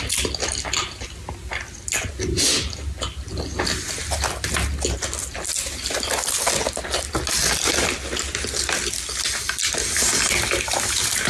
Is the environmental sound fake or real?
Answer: real